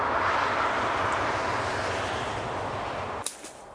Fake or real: real